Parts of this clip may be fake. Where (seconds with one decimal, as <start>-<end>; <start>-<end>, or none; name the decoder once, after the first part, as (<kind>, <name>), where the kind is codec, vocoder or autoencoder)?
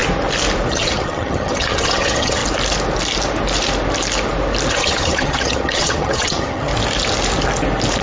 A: 0.7-2.4 (vocoder, HiFi-GAN); 4.7-6.7